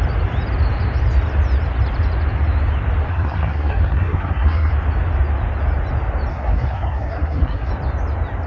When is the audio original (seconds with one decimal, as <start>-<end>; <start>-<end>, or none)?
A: 0.0-3.1; 4.7-6.3; 7.7-8.5